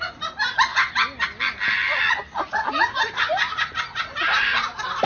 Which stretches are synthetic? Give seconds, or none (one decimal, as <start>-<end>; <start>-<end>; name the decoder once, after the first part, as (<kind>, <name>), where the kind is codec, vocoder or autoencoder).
none